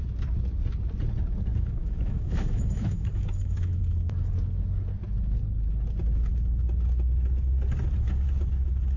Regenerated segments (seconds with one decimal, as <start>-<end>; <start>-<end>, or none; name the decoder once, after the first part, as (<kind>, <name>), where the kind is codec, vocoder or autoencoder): 1.5-3.8 (autoencoder, DAC-VAE)